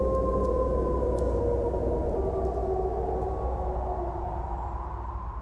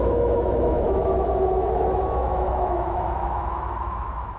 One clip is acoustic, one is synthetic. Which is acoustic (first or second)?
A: first